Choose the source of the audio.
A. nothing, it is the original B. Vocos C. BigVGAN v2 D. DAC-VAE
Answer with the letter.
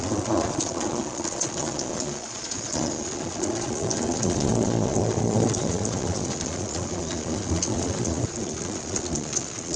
B